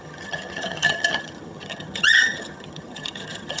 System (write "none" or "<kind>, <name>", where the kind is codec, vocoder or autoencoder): vocoder, HiFi-GAN